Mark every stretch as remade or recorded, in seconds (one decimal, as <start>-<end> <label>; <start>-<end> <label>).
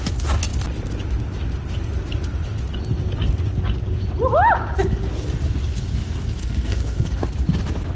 0.0-6.4 recorded; 6.4-7.2 remade; 7.2-8.0 recorded